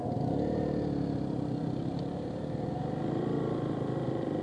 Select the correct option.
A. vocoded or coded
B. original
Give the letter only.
B